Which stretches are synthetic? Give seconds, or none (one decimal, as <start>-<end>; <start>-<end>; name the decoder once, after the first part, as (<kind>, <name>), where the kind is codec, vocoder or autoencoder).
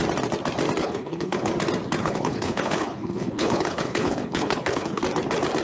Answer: 0.8-1.5 (codec, HILCodec); 2.0-5.0